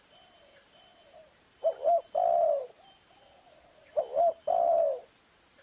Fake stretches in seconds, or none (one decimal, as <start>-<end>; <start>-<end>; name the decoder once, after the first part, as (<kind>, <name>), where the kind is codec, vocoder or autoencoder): 0.9-2.0 (vocoder, BigVGAN v2); 2.6-4.0